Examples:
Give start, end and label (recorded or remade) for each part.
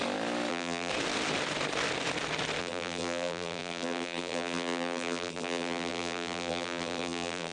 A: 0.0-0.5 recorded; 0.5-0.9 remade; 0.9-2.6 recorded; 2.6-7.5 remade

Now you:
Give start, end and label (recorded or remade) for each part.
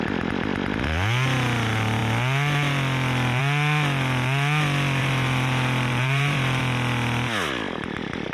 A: 0.0-5.0 recorded; 5.0-6.6 remade; 6.6-8.3 recorded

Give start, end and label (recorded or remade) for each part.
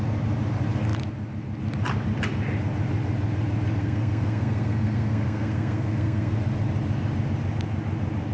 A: 0.0-3.8 recorded; 3.8-6.4 remade; 6.4-8.3 recorded